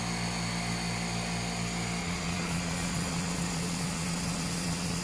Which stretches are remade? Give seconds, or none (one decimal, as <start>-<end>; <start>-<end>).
2.0-5.0